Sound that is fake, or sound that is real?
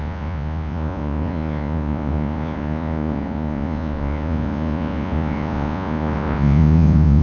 fake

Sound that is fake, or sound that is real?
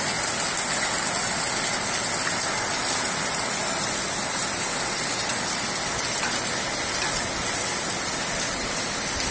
real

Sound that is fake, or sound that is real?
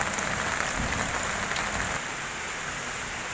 real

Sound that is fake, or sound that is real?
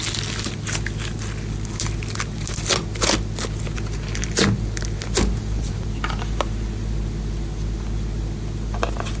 real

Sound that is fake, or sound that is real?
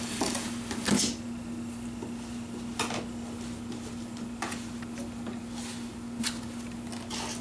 real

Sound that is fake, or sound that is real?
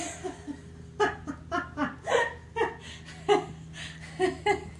real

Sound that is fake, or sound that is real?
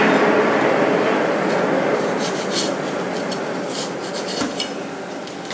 real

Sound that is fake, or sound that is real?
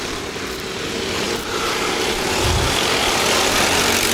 real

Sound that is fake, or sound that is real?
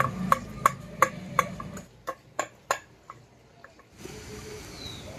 real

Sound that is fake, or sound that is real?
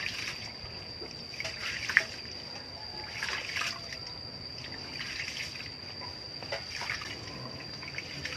real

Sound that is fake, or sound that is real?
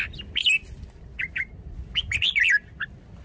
real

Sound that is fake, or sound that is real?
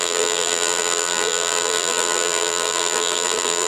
fake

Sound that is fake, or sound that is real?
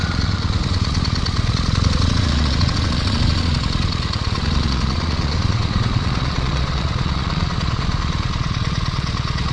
fake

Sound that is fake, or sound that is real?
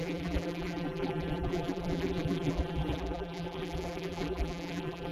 fake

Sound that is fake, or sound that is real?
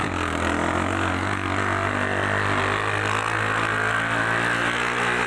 real